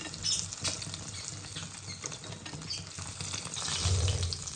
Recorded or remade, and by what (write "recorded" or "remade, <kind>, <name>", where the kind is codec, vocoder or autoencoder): recorded